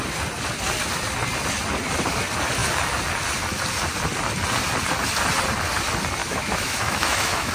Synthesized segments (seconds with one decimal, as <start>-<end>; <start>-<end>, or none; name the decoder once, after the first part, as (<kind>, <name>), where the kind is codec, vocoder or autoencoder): 6.2-7.5 (autoencoder, DAC-VAE)